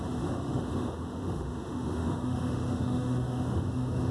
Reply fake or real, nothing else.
fake